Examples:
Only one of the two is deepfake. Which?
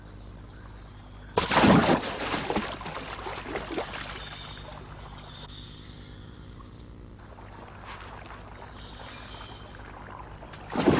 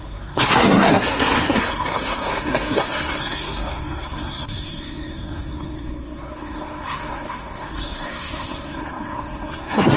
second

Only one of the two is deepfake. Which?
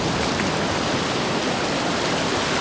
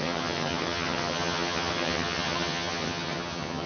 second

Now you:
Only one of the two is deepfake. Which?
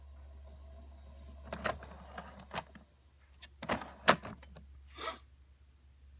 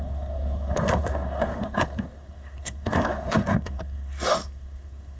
second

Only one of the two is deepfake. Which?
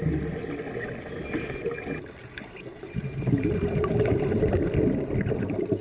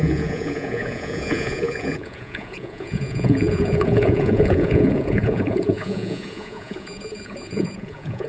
second